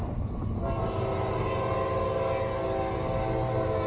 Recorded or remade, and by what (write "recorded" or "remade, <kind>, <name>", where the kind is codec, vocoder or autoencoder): recorded